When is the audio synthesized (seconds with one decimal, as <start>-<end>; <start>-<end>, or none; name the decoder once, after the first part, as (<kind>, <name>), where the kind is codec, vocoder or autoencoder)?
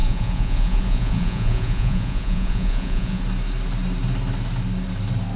0.0-3.2 (vocoder, Vocos)